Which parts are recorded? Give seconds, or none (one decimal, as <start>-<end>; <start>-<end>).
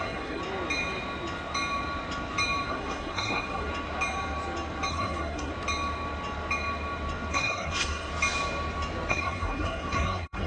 0.4-2.7; 3.7-4.9; 5.5-7.3; 8.1-9.1